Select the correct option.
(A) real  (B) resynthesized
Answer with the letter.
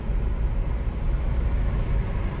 A